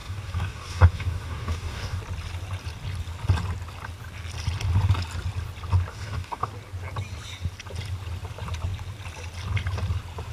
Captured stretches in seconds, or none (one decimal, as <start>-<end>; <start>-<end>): 2.0-5.9; 6.5-10.3